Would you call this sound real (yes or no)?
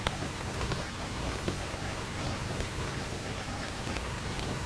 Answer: no